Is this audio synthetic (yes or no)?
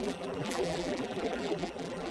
yes